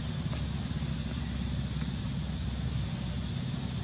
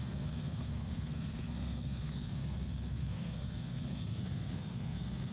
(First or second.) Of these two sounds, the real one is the first